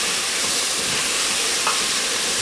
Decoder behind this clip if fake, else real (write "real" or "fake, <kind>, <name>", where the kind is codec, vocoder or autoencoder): fake, vocoder, BigVGAN v2